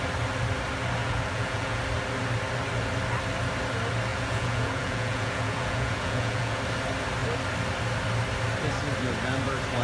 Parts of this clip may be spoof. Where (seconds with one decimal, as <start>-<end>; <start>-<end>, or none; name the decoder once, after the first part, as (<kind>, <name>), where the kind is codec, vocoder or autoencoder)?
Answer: 1.0-1.8 (vocoder, Vocos); 4.1-6.6